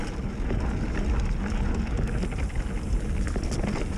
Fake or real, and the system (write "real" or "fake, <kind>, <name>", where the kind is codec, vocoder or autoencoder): real